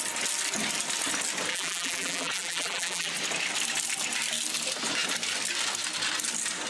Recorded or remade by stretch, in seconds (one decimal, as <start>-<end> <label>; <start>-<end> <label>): 0.0-1.5 recorded; 1.5-3.1 remade; 3.1-6.7 recorded